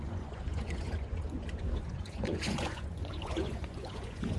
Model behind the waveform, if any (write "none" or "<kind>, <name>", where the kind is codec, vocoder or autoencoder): vocoder, Vocos